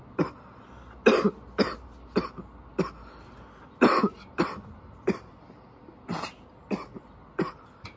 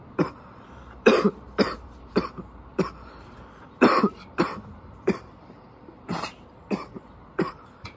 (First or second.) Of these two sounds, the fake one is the second